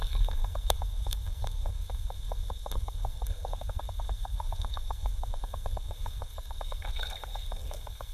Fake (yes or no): yes